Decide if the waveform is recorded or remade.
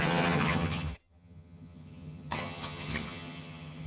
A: remade